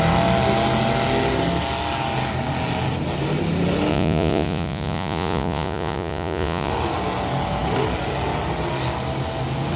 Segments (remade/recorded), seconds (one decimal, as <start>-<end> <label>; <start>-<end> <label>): 0.0-3.9 recorded; 3.9-6.7 remade; 6.7-9.8 recorded